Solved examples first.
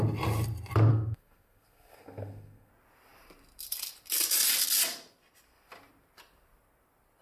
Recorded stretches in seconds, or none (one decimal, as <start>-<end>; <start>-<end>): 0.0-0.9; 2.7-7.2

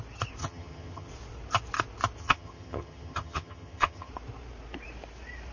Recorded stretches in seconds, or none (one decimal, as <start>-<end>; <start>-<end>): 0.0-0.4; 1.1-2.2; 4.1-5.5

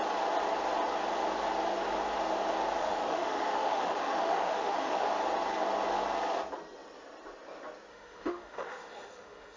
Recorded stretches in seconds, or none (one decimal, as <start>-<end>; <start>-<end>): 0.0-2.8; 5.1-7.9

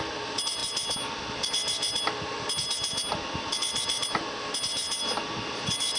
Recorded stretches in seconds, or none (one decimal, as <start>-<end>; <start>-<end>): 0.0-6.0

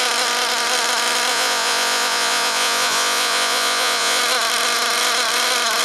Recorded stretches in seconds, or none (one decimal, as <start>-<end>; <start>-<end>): 0.0-1.3; 4.2-5.8

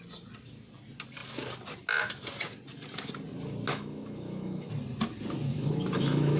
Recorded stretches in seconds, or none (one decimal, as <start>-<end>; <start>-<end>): 0.0-3.7; 4.7-5.5

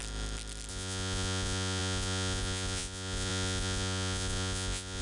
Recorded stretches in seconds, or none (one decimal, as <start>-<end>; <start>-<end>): 0.0-0.7